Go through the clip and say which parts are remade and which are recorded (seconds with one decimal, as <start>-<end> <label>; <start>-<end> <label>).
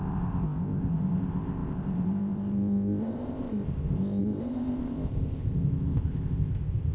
0.0-6.9 remade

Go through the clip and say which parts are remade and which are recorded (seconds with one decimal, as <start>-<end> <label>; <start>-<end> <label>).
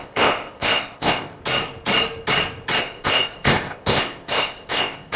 0.0-1.4 remade; 1.4-2.8 recorded; 2.8-5.2 remade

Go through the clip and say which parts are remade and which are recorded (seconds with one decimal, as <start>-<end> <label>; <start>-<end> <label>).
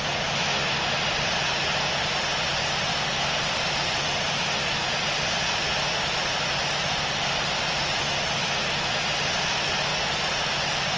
0.0-11.0 recorded